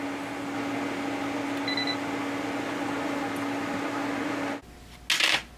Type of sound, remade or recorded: recorded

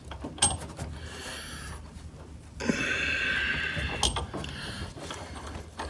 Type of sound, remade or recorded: recorded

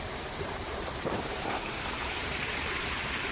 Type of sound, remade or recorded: remade